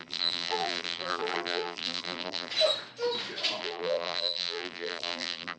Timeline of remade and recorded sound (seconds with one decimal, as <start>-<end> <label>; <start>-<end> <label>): 0.0-2.5 remade; 2.5-3.6 recorded; 3.6-5.6 remade